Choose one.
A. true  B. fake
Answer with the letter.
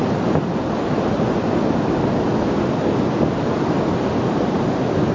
A